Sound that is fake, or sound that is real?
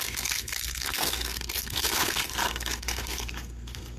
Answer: fake